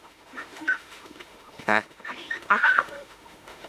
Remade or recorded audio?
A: remade